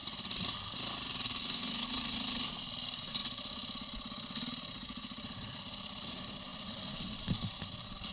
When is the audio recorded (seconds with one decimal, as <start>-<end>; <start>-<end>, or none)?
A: 0.0-1.9; 3.2-6.1